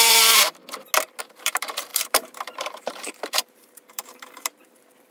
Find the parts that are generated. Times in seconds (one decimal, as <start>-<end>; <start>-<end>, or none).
0.0-0.6; 1.2-5.1